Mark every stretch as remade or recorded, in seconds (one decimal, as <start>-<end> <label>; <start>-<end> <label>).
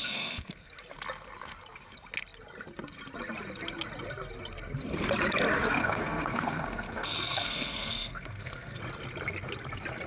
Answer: 0.0-0.7 remade; 0.7-5.8 recorded; 5.8-8.8 remade; 8.8-10.1 recorded